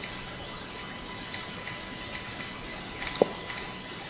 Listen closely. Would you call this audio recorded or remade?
recorded